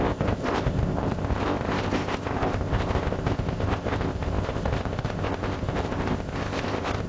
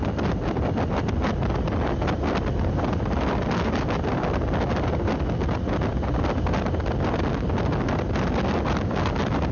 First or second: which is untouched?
second